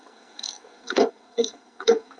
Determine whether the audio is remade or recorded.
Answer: remade